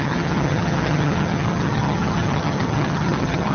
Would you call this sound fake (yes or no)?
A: yes